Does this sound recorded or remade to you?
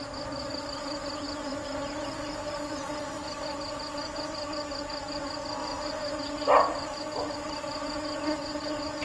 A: recorded